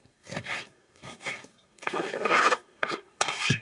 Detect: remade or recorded remade